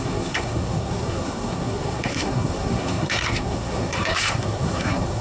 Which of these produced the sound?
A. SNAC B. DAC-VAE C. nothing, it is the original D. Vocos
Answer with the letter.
A